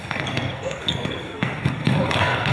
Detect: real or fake fake